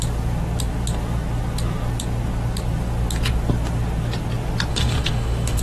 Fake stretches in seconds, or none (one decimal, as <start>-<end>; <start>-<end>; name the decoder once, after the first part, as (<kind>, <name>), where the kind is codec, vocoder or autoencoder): 4.7-5.6 (autoencoder, DAC-VAE)